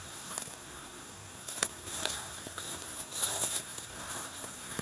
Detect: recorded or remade remade